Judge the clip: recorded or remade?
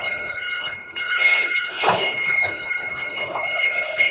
remade